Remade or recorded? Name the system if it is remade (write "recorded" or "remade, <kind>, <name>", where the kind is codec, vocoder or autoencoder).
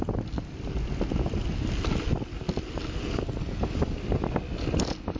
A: recorded